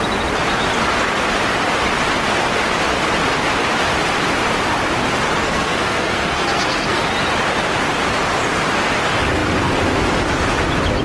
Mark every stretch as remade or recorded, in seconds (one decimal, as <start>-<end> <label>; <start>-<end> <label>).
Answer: 0.0-5.4 recorded; 5.4-7.1 remade; 7.1-11.0 recorded